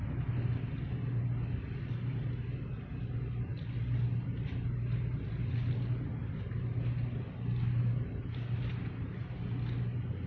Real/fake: real